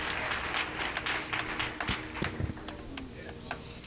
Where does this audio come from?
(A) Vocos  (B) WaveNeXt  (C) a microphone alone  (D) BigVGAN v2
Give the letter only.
C